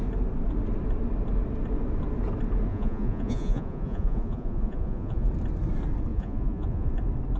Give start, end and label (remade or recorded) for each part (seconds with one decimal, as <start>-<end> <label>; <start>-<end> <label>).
0.0-2.7 recorded; 2.7-5.3 remade; 5.3-6.1 recorded; 6.1-6.9 remade; 6.9-7.4 recorded